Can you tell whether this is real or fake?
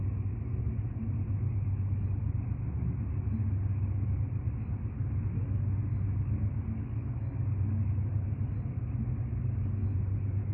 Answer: real